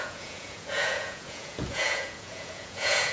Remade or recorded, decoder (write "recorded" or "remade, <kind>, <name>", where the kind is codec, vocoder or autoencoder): remade, vocoder, Vocos